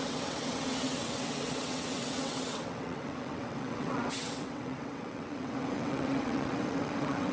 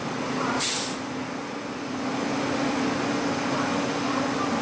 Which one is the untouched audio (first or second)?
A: second